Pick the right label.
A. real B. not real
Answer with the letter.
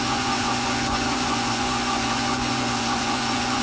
B